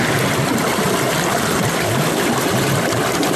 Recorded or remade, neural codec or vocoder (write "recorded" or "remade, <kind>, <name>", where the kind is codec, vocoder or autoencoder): recorded